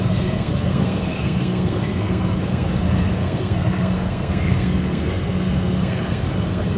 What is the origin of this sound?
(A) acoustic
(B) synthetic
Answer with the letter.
B